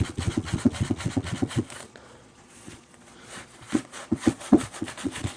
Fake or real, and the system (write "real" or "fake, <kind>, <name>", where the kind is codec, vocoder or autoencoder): fake, vocoder, Vocos